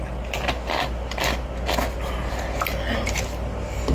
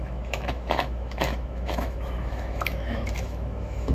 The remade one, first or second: second